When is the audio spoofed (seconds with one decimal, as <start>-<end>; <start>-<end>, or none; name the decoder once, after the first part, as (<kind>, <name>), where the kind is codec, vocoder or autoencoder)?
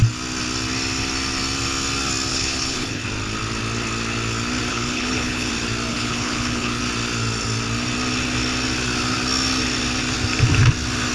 2.3-3.0 (codec, HILCodec); 4.7-5.5; 5.9-6.8